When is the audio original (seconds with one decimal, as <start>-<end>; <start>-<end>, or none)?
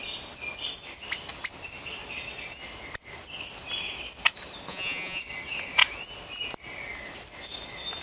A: 0.0-4.7; 5.2-8.0